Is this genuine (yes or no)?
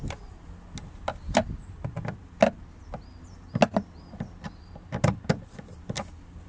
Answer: yes